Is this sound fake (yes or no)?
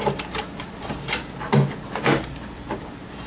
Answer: no